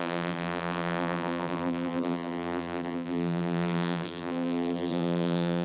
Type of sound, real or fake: fake